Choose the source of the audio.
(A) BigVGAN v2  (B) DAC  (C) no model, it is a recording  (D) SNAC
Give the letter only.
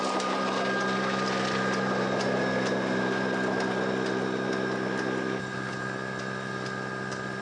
C